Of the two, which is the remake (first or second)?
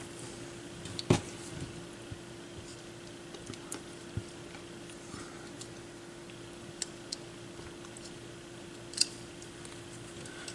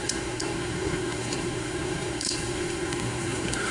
second